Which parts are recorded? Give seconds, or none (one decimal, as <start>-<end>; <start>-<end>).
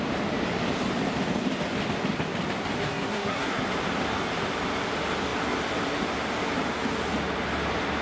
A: 0.0-2.8; 3.6-8.0